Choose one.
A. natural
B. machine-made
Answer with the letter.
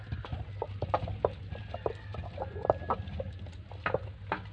A